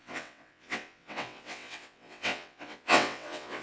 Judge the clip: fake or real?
fake